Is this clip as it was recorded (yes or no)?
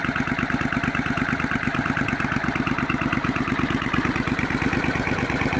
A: yes